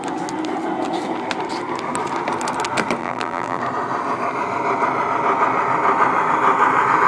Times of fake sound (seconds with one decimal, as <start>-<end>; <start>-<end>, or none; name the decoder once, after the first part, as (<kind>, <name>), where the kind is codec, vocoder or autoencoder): 3.0-3.6 (vocoder, BigVGAN v2)